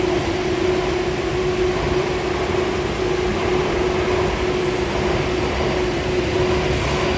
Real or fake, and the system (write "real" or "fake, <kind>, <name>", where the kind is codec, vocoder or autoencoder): real